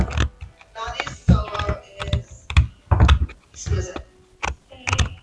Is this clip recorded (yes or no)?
yes